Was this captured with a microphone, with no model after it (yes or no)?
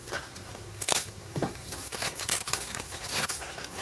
no